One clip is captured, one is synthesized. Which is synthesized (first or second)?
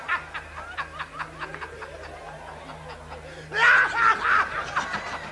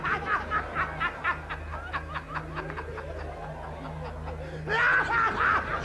first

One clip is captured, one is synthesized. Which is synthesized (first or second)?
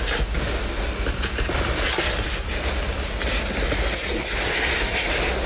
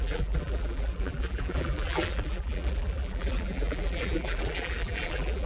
second